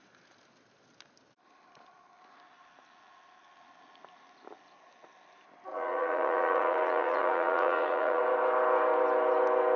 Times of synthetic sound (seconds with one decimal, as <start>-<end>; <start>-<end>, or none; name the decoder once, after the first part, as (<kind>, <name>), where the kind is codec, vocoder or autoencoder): 5.7-8.2 (vocoder, Vocos)